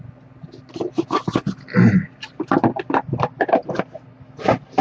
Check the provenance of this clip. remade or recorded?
recorded